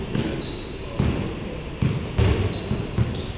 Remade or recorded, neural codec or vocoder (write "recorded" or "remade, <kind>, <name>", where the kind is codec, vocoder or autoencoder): recorded